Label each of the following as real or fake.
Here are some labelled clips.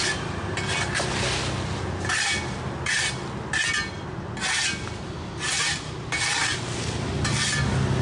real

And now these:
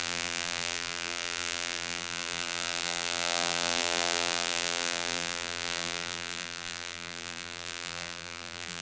fake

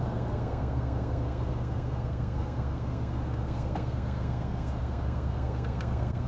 fake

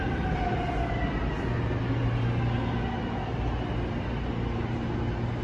real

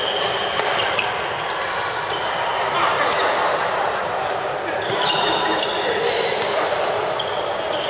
real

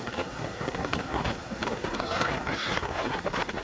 fake